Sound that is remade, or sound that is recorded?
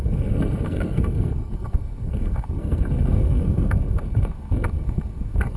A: remade